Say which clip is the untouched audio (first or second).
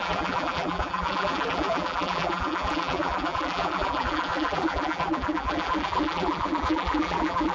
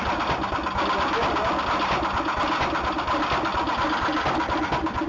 second